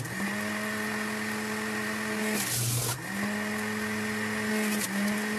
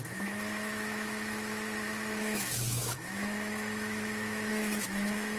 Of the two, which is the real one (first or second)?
first